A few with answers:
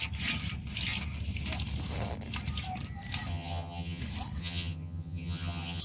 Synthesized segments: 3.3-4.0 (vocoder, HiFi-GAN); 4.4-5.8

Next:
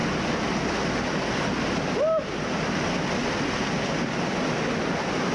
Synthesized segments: none

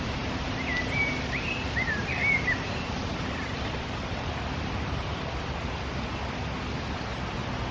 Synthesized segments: 0.7-5.3 (vocoder, BigVGAN v2)

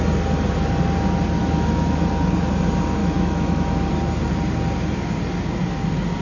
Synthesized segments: 1.4-2.1 (autoencoder, DAC-VAE); 3.0-3.9

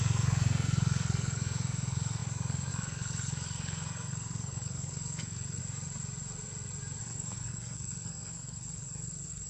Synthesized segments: 0.0-5.6 (codec, SNAC); 7.0-9.5

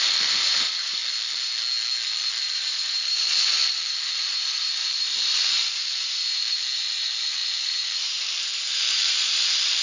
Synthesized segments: 0.0-1.0 (vocoder, BigVGAN v2); 2.4-9.8

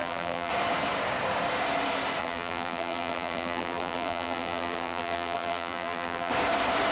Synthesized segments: 0.0-0.5 (vocoder, BigVGAN v2); 2.2-6.3